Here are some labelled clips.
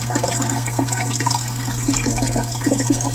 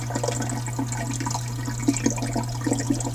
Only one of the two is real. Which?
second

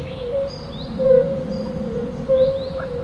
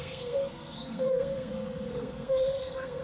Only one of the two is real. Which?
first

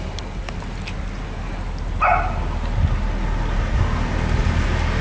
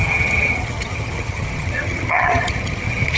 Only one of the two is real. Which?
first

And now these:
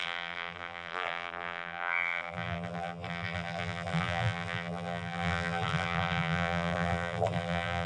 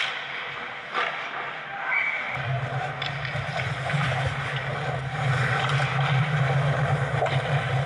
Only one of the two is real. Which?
second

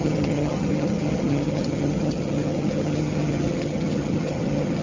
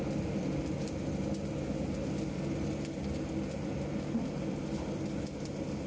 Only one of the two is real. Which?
second